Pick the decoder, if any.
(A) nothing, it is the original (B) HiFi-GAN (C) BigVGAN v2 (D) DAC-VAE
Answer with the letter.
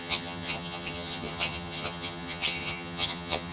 B